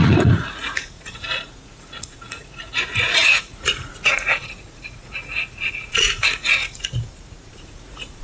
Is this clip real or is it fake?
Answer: fake